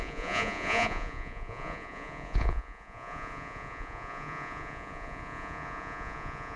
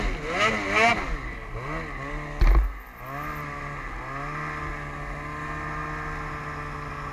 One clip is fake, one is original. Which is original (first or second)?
second